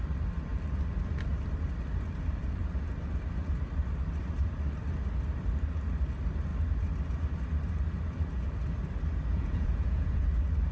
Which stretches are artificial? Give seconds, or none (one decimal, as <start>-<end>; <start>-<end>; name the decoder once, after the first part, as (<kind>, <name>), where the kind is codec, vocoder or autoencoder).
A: 9.3-10.2 (vocoder, Vocos)